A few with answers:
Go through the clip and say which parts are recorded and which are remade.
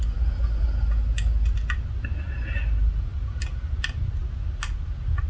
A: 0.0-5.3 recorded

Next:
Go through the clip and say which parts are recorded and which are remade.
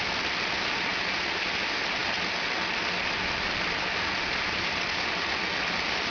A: 0.0-6.1 recorded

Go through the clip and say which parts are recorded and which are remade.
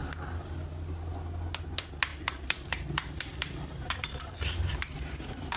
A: 0.0-2.1 recorded; 2.1-5.6 remade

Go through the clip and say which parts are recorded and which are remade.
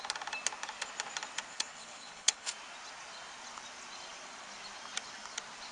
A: 0.0-1.5 recorded; 1.5-2.5 remade; 2.5-5.7 recorded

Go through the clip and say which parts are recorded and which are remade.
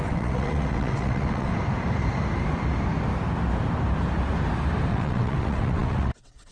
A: 0.0-1.5 remade; 1.5-4.9 recorded; 4.9-6.5 remade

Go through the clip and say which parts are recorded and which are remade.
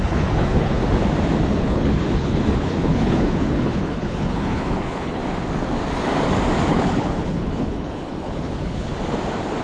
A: 0.0-0.8 remade; 0.8-1.6 recorded; 1.6-5.2 remade; 5.2-6.7 recorded; 6.7-8.9 remade; 8.9-9.6 recorded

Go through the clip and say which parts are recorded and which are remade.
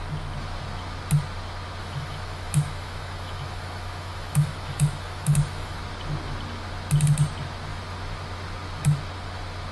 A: 0.0-1.8 recorded; 1.8-5.8 remade; 5.8-9.7 recorded